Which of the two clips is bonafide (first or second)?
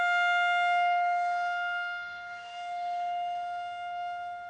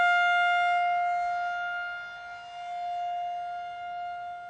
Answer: second